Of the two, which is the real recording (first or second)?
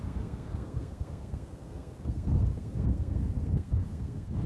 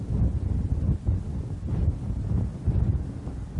second